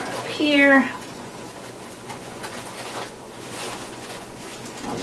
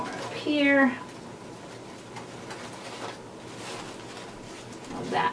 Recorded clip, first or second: second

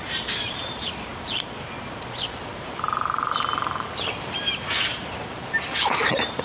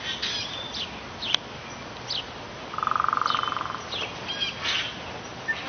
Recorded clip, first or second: second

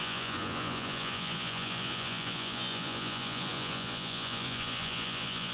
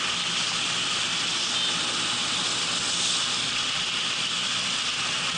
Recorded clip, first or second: second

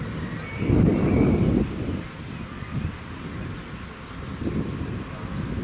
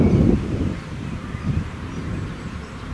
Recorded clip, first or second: first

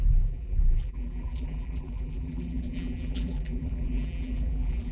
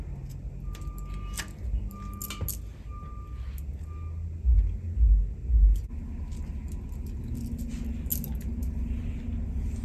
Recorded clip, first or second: second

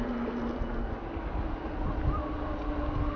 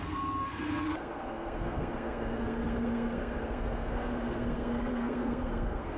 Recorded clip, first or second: first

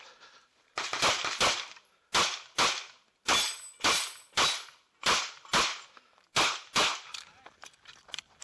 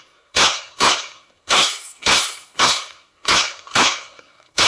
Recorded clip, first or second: first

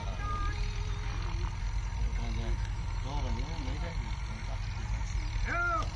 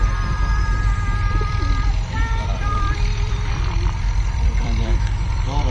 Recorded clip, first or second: first